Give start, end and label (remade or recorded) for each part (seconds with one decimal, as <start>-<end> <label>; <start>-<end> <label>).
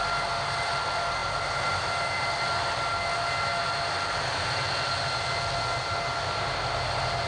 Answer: 0.0-7.3 recorded